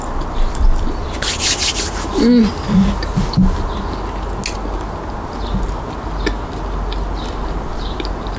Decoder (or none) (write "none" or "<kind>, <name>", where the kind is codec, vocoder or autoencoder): none